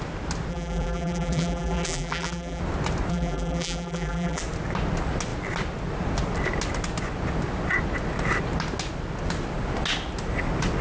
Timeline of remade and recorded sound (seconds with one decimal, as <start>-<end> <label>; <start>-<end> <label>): 0.0-0.5 recorded; 0.5-2.6 remade; 2.6-3.1 recorded; 3.1-4.4 remade; 4.4-10.8 recorded